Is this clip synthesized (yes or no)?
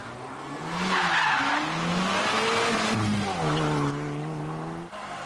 no